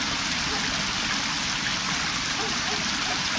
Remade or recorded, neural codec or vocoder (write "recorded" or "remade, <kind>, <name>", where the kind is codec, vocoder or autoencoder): recorded